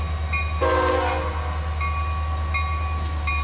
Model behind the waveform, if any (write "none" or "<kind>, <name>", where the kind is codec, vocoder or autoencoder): none